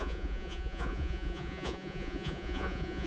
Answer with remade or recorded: remade